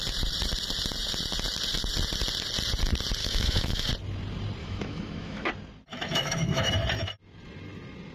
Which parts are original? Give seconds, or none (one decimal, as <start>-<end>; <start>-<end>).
0.0-3.2; 3.9-4.6; 5.5-5.9; 6.7-8.1